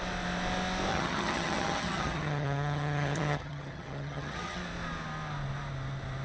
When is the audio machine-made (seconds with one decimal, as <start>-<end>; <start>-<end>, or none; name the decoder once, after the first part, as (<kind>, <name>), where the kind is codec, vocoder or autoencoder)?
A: 0.9-4.6 (vocoder, HiFi-GAN)